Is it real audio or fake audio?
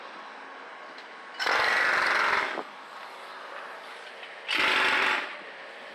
real